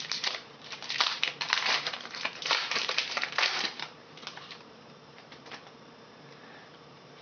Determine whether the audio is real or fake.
fake